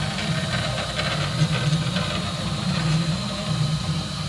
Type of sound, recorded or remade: recorded